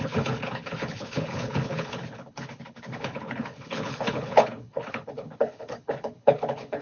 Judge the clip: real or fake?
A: fake